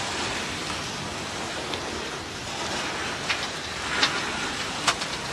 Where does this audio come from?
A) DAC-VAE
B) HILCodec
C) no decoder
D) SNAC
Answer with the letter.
C